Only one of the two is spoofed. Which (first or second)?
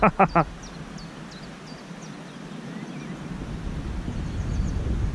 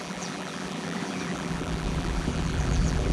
second